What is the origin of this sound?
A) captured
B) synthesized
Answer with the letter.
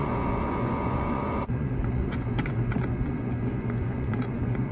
B